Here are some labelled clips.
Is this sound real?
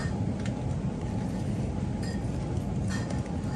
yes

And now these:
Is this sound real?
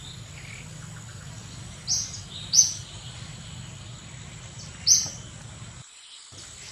yes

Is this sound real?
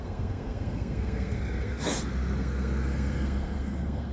no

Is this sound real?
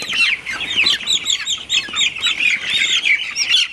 yes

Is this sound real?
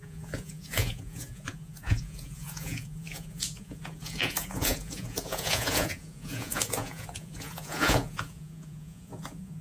no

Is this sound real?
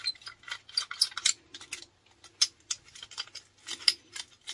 yes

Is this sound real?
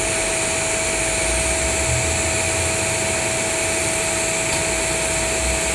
yes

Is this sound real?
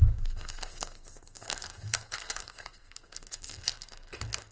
no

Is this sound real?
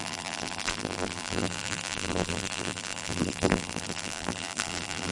no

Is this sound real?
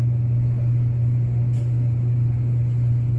yes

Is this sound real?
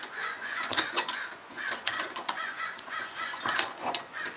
no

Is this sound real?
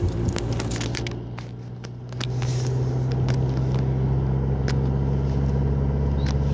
yes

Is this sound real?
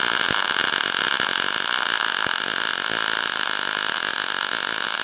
yes